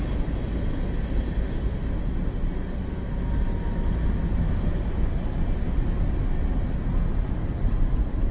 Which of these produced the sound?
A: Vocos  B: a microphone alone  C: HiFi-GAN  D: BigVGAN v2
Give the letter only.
B